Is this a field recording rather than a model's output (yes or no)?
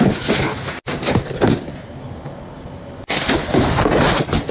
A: yes